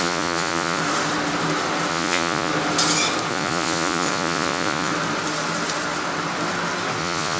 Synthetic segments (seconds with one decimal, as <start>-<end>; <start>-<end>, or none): 0.0-0.8; 1.9-2.5; 3.3-4.9; 7.0-7.4